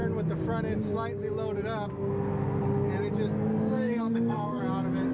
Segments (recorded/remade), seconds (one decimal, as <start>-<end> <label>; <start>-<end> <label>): 0.0-3.7 recorded; 3.7-4.6 remade; 4.6-5.1 recorded